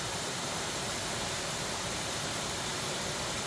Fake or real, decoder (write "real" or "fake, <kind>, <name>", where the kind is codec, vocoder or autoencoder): fake, vocoder, BigVGAN v2